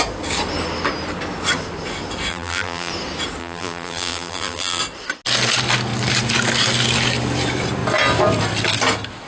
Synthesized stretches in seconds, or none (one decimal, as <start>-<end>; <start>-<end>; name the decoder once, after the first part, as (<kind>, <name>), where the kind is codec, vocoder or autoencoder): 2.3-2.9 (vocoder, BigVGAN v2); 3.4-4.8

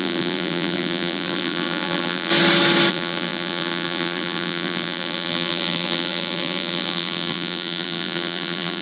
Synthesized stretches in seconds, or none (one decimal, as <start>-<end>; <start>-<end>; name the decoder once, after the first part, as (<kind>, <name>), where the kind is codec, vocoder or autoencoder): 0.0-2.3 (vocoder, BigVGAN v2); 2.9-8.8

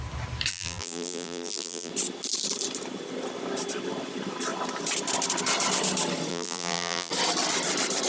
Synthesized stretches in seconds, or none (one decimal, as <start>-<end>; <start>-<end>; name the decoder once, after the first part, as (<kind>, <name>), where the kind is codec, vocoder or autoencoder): 0.5-1.9 (vocoder, BigVGAN v2); 6.3-7.1

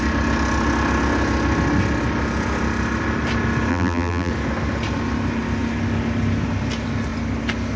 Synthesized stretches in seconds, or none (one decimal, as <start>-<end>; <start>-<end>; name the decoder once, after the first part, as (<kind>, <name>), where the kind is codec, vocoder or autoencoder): 3.7-4.3 (vocoder, BigVGAN v2)

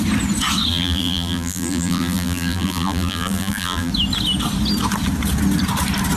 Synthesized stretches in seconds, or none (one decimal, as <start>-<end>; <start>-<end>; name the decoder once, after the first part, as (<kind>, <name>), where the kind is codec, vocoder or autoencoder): 0.7-3.9 (vocoder, BigVGAN v2)

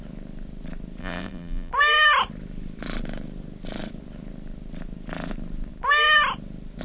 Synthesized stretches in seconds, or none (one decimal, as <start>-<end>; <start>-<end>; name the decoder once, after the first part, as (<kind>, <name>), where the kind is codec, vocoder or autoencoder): 1.0-1.7 (vocoder, BigVGAN v2)